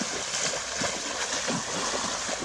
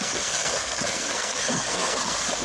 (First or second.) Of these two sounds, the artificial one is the second